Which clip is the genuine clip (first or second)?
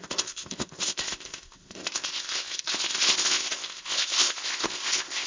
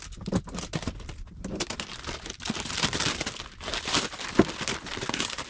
second